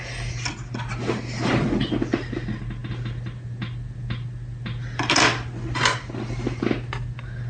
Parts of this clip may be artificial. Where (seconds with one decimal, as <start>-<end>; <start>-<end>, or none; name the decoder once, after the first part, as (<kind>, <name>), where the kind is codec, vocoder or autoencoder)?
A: none